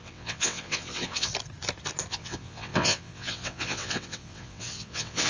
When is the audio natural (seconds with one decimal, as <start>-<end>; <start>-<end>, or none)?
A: 1.3-2.1